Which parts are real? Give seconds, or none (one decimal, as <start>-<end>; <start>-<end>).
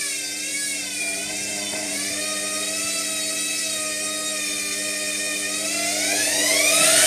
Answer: 0.0-0.5; 2.2-7.1